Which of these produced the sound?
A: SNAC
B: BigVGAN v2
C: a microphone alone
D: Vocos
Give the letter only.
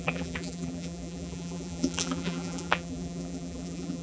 B